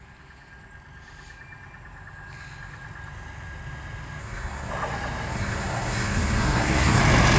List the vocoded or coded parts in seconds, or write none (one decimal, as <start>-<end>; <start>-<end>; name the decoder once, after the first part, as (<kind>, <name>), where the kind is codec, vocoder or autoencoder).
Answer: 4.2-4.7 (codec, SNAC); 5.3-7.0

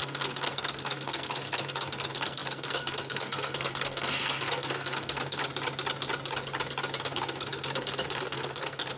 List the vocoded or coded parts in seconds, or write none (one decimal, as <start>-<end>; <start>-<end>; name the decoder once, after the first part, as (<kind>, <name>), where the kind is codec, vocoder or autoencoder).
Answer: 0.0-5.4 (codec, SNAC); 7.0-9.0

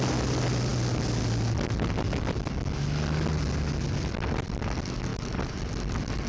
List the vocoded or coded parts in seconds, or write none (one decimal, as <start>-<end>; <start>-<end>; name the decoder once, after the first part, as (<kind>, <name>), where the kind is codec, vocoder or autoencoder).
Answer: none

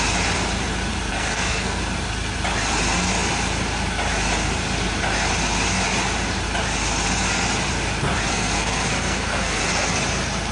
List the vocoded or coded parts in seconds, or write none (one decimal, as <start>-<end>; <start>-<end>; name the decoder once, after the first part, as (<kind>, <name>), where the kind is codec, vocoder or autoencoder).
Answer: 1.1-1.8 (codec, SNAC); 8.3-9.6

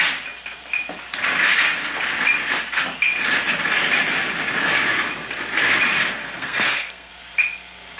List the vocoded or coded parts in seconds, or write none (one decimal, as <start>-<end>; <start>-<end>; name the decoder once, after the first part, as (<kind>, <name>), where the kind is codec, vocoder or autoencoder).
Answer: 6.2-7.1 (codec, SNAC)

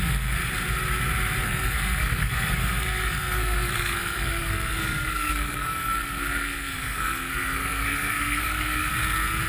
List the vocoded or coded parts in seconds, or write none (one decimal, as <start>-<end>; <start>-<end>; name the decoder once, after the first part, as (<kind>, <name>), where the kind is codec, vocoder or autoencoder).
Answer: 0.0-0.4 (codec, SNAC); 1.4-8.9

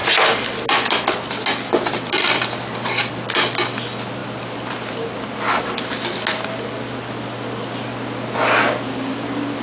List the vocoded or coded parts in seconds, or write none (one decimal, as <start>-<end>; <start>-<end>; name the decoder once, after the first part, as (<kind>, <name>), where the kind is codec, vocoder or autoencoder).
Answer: none